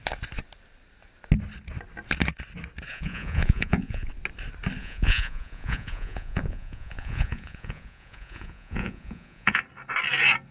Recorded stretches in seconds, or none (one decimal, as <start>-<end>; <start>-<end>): 0.0-2.9; 4.1-4.8; 9.6-10.5